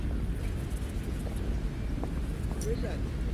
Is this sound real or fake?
real